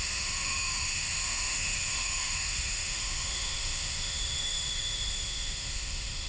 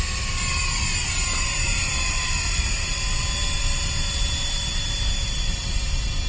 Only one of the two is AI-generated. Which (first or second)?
first